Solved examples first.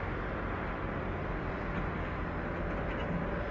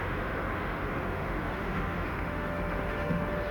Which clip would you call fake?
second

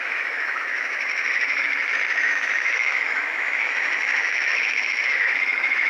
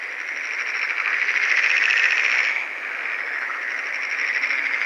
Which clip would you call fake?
first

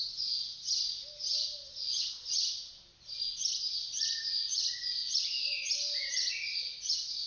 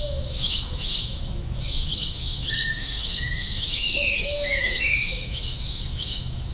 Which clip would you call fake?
second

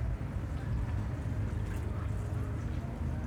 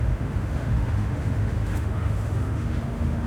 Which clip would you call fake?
second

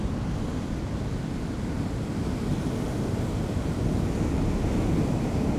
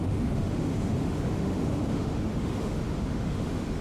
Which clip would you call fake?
second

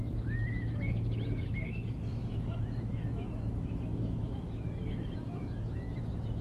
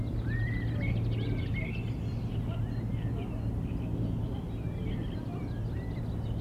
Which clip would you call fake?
first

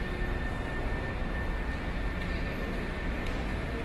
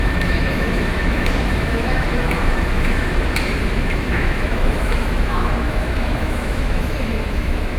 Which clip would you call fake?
second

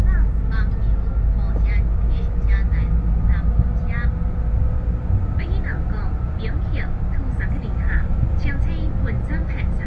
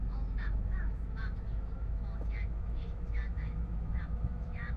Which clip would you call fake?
second